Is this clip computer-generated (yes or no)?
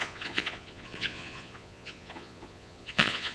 yes